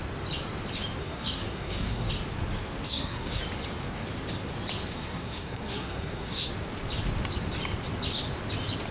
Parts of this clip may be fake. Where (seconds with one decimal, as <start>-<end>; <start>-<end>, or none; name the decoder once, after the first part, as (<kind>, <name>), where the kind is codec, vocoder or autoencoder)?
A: 1.0-2.1 (codec, SNAC); 2.9-3.4; 4.9-6.5